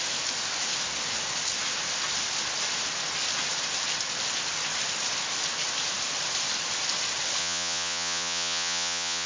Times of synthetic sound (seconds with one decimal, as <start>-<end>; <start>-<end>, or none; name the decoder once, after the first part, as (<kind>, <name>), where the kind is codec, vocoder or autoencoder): 7.4-9.3 (vocoder, Vocos)